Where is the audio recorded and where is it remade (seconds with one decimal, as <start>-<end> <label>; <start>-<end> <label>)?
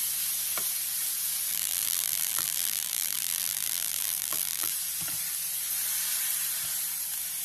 0.0-1.5 recorded; 1.5-4.7 remade; 4.7-7.4 recorded